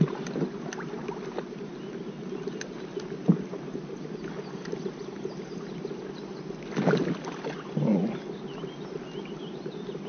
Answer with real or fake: real